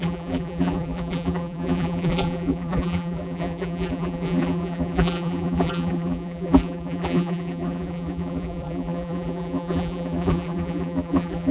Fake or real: fake